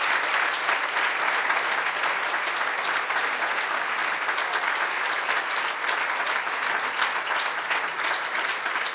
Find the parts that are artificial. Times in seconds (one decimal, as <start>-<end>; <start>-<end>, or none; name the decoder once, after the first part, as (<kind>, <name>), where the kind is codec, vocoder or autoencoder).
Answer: none